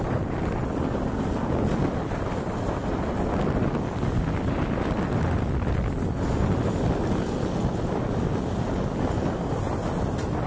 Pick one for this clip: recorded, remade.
recorded